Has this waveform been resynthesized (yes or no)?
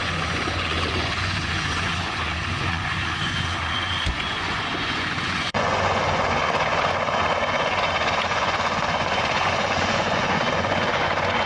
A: yes